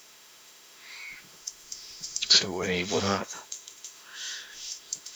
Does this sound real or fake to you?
fake